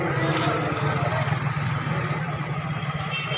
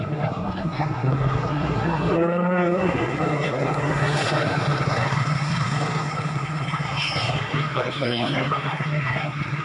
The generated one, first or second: second